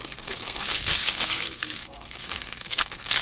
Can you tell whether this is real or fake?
fake